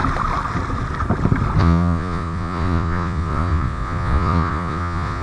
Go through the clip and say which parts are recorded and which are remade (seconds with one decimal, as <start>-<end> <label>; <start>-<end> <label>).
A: 0.0-1.6 recorded; 1.6-5.2 remade